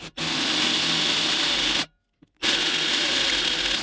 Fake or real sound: real